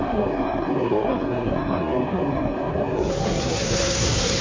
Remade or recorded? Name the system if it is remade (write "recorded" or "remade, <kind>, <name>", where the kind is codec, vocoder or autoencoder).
remade, codec, SNAC